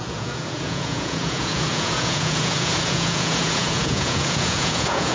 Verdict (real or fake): fake